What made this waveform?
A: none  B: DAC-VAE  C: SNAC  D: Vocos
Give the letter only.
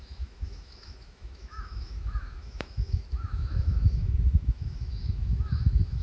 B